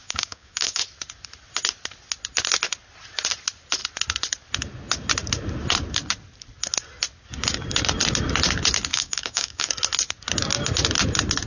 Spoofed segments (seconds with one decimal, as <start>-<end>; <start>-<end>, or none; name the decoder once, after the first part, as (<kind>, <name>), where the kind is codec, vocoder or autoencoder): 0.0-0.8 (codec, DAC); 8.9-9.7